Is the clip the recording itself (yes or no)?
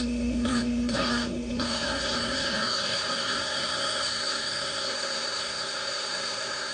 no